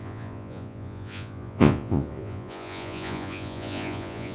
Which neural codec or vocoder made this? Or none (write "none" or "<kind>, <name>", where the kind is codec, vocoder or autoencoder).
vocoder, Vocos